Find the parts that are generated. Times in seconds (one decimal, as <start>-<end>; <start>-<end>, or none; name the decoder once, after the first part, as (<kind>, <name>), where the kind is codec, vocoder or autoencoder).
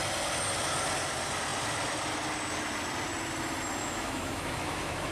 3.8-5.1 (autoencoder, DAC-VAE)